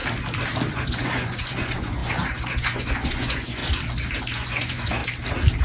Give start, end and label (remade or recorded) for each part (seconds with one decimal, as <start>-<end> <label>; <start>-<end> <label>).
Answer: 0.0-0.7 recorded; 0.7-3.6 remade; 3.6-4.2 recorded; 4.2-5.0 remade; 5.0-5.6 recorded